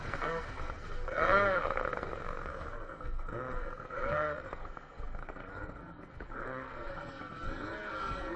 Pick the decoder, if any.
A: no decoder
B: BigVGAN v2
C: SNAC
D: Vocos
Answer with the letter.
C